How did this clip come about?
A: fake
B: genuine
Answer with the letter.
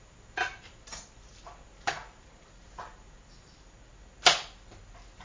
B